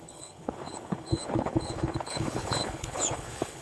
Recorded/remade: remade